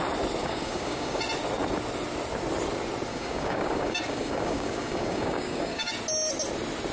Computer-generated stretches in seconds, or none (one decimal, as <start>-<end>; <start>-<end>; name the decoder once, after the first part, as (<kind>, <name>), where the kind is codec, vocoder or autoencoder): 0.4-1.2 (codec, DAC); 3.1-5.9